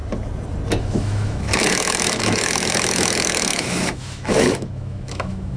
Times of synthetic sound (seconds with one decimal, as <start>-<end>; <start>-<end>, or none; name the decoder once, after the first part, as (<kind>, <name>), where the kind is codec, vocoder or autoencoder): 0.8-5.6 (autoencoder, DAC-VAE)

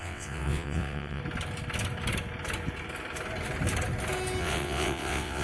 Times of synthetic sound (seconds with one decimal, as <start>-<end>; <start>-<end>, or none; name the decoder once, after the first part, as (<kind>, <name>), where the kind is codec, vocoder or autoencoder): 0.0-1.2 (vocoder, WaveNeXt); 4.4-5.4